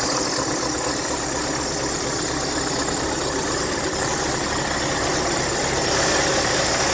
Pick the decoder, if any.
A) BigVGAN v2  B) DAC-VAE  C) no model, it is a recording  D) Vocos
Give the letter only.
C